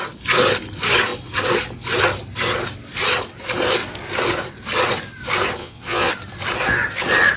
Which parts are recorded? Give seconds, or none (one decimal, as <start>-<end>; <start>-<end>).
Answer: 0.0-5.6; 6.1-7.4